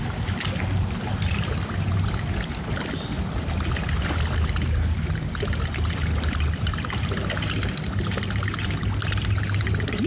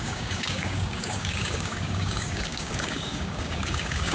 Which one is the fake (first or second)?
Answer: second